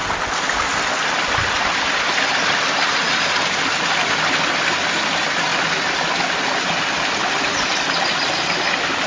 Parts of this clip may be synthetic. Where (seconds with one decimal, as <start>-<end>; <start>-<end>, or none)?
0.0-9.1